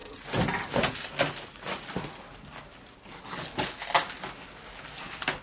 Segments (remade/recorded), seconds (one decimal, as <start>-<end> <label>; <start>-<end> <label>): 0.0-5.4 recorded